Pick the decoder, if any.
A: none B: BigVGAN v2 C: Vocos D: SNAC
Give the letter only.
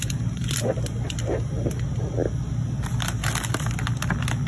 A